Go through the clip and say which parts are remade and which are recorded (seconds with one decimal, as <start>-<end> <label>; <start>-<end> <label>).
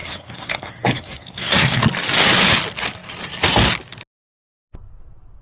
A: 0.0-1.8 remade; 1.8-5.4 recorded